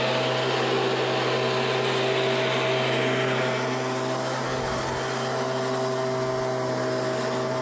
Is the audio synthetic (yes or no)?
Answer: no